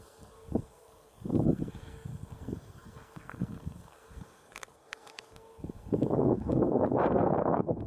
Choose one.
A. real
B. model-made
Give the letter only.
B